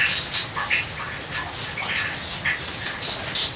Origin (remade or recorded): recorded